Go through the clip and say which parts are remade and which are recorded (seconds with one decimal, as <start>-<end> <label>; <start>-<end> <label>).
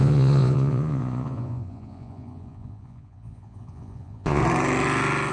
0.0-4.4 remade; 4.4-5.3 recorded